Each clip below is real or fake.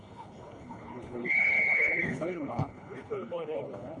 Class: fake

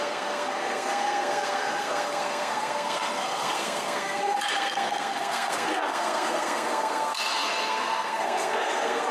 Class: fake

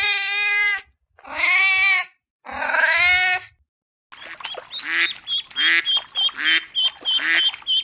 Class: real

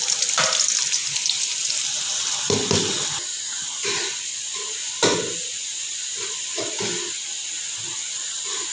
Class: real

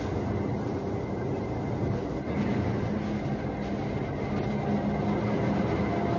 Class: real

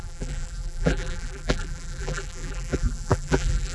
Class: fake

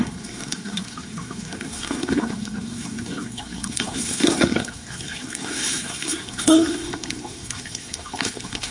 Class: fake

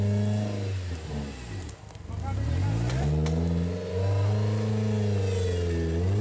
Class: real